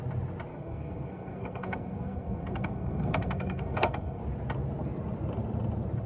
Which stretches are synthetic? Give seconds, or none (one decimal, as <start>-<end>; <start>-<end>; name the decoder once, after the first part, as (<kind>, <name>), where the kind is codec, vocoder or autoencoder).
0.5-4.2 (codec, SNAC)